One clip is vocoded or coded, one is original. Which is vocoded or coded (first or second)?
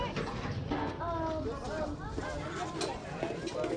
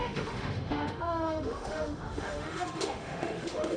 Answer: second